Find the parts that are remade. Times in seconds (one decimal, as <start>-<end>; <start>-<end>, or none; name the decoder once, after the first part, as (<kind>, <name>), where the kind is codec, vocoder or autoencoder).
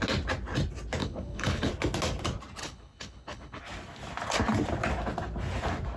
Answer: 1.0-1.7 (codec, HILCodec); 2.6-3.6